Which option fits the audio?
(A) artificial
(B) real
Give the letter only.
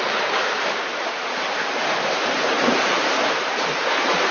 A